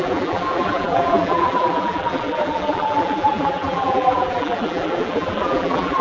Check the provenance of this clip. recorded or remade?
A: remade